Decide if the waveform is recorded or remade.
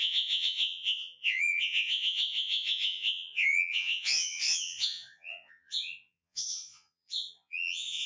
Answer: remade